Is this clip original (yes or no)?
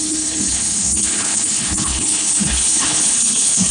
no